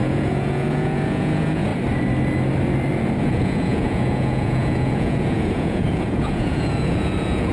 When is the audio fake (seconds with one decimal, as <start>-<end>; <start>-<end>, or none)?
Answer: 0.0-1.7; 3.2-7.5